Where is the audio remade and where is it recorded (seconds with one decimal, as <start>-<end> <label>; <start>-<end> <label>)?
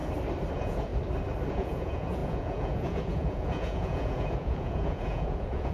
0.0-0.5 recorded; 0.5-0.9 remade; 0.9-1.5 recorded; 1.5-5.7 remade